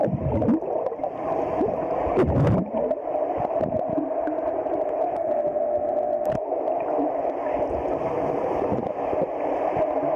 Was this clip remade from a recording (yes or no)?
no